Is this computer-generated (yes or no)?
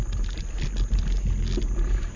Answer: no